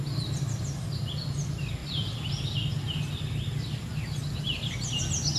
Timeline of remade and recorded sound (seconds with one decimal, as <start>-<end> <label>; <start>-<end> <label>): 0.0-5.4 recorded